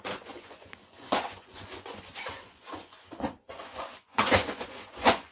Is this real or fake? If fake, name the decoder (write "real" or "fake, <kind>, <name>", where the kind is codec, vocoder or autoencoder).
fake, vocoder, Vocos